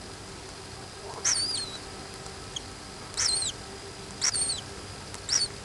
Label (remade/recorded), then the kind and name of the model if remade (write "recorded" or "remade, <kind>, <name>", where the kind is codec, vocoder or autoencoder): recorded